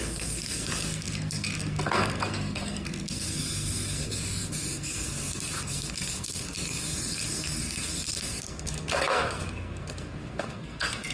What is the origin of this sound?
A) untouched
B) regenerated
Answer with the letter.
B